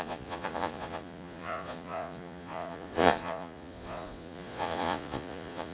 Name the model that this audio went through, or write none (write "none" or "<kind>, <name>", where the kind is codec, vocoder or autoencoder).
vocoder, Vocos